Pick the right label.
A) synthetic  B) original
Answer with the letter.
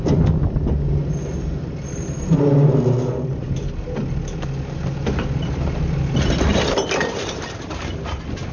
B